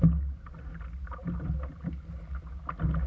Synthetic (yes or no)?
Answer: no